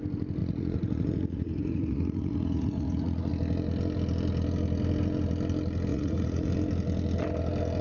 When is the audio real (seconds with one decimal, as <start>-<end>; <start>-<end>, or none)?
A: 0.0-0.4; 3.3-5.9; 6.5-7.8